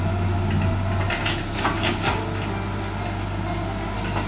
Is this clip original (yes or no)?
yes